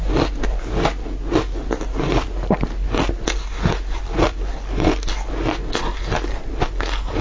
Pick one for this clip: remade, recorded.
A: recorded